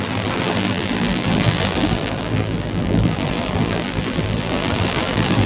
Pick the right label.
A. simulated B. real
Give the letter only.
A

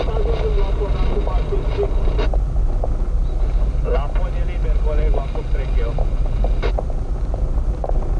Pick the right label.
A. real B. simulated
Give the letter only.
A